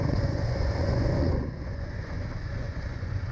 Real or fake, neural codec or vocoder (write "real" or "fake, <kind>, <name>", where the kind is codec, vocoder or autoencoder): fake, vocoder, Vocos